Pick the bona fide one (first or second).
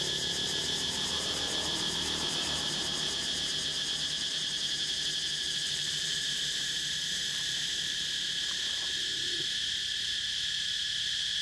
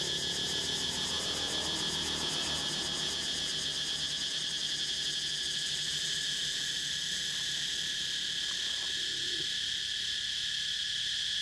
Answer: second